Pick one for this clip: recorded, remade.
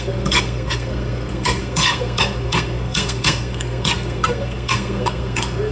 remade